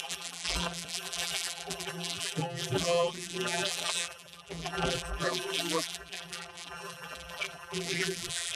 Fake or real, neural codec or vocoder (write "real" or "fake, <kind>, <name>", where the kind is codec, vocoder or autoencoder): fake, vocoder, BigVGAN v2